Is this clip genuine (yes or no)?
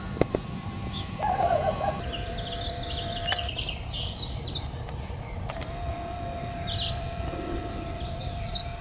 yes